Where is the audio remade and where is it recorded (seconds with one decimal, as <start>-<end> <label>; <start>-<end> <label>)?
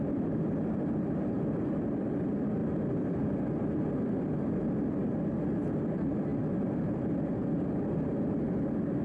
0.0-9.0 recorded